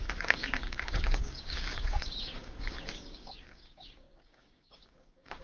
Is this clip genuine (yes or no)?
no